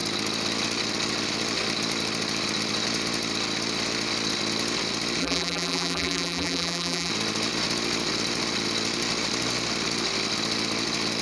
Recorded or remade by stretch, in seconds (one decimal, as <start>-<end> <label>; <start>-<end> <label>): 0.0-5.2 recorded; 5.2-7.1 remade; 7.1-11.2 recorded